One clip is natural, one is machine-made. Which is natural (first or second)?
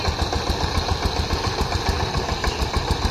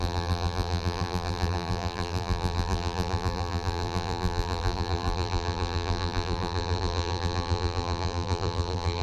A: first